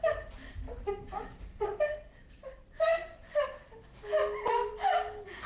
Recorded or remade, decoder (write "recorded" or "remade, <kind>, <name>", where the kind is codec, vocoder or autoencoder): recorded